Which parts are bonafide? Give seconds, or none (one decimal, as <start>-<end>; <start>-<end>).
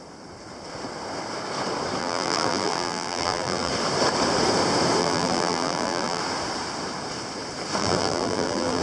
0.0-2.0; 3.7-5.0; 6.2-7.8